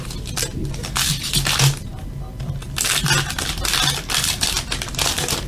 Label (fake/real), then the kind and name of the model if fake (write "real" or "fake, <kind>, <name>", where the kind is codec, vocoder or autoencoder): real